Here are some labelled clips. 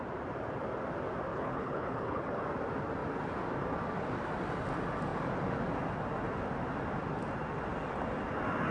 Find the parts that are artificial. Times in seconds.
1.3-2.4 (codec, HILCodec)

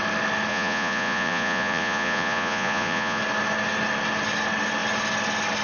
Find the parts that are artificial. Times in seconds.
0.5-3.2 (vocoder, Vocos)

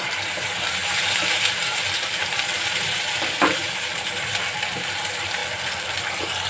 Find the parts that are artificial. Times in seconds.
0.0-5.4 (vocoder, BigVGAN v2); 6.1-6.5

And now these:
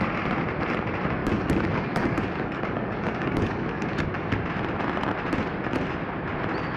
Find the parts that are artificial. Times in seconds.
1.2-4.3 (codec, DAC)

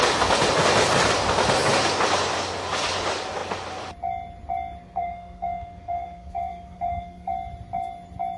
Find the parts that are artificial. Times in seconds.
4.8-7.3 (codec, SNAC)